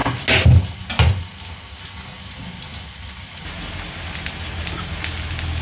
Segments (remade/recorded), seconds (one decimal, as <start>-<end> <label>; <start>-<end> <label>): 0.0-5.6 recorded